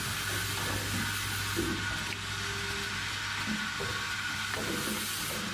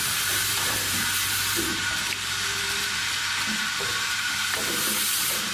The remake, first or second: second